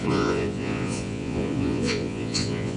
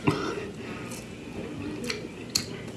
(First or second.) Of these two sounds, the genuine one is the second